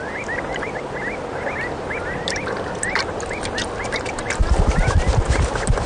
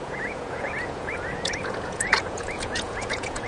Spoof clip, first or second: second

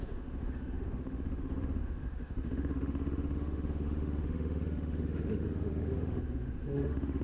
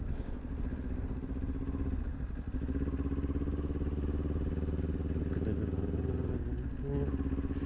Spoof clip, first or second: first